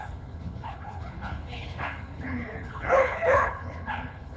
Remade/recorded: remade